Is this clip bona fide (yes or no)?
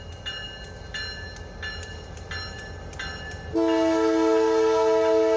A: yes